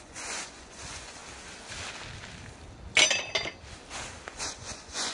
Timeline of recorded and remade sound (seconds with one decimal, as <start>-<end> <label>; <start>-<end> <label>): 0.0-1.2 remade; 1.2-4.3 recorded; 4.3-5.1 remade